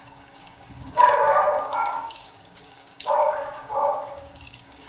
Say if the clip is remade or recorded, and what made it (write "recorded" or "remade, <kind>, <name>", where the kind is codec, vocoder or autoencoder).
remade, codec, DAC